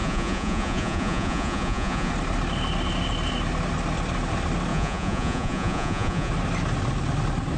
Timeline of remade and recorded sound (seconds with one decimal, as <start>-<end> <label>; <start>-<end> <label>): 0.0-2.1 remade; 2.1-4.7 recorded; 4.7-6.3 remade; 6.3-7.6 recorded